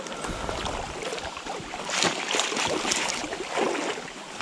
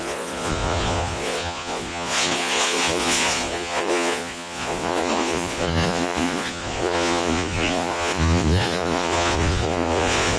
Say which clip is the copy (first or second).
second